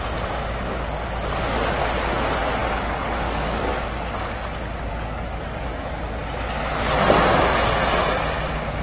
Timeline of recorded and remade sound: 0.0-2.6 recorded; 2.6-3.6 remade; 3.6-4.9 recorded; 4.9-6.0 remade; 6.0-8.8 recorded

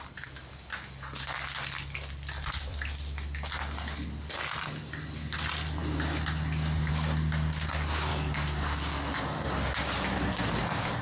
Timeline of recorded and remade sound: 0.0-8.1 recorded; 8.1-9.2 remade; 9.2-11.0 recorded

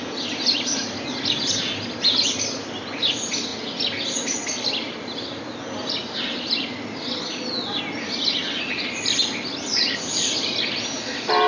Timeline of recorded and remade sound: 0.0-11.5 recorded

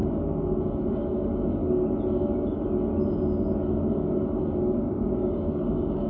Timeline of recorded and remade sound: 0.0-0.9 recorded; 0.9-1.6 remade; 1.6-4.6 recorded; 4.6-6.1 remade

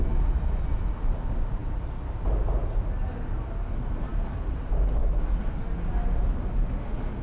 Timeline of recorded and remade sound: 0.0-7.2 recorded

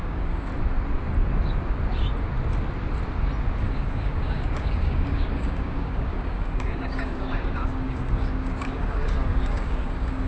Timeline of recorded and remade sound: 0.0-0.5 remade; 0.5-3.6 recorded; 3.6-10.3 remade

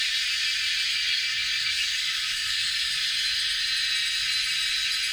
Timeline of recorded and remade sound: 0.0-0.9 recorded; 0.9-2.9 remade; 2.9-5.1 recorded